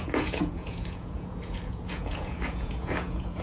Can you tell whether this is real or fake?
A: fake